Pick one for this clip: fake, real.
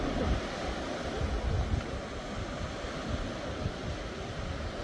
real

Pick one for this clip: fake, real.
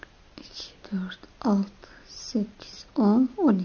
real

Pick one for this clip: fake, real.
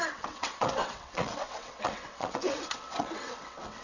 fake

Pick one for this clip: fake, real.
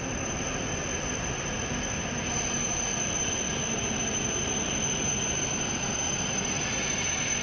real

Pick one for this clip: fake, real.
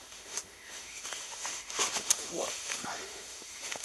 fake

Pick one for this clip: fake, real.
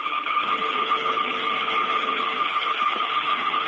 fake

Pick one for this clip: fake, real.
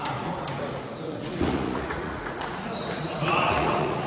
fake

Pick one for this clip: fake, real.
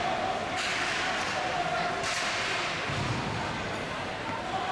real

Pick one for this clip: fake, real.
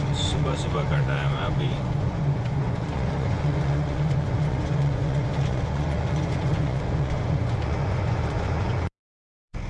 fake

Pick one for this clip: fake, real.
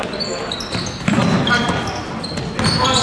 real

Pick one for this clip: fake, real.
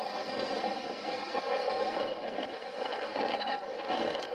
fake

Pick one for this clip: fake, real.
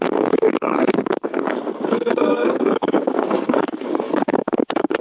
fake